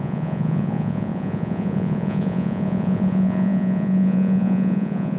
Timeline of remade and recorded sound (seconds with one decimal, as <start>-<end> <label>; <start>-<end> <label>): 0.0-5.2 remade